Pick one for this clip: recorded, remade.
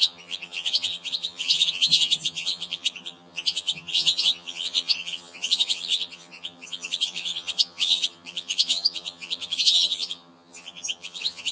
remade